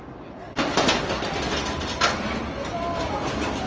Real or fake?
real